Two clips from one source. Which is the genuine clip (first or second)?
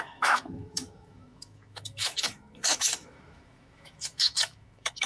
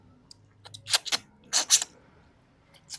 second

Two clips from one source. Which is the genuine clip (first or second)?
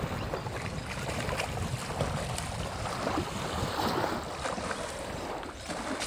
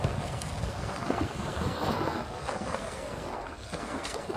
first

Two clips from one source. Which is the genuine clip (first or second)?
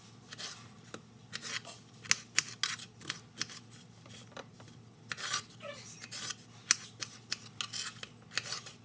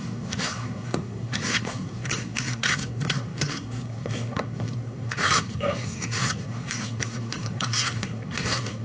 first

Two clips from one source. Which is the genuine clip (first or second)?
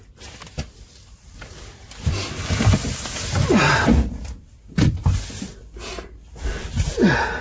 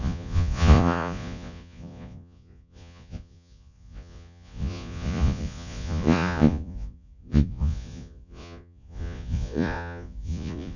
first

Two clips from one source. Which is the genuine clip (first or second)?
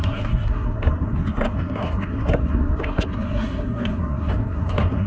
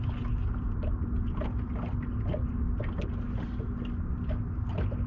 second